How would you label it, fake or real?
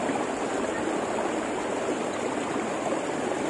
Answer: fake